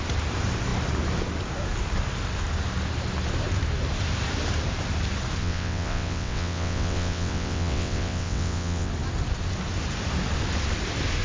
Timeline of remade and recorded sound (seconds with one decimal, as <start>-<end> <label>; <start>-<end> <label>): 0.0-5.4 recorded; 5.4-8.9 remade; 8.9-11.2 recorded